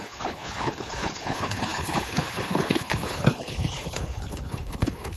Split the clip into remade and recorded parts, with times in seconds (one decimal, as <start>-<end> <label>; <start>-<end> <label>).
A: 0.0-5.2 remade